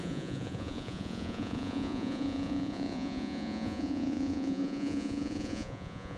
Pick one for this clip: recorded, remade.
remade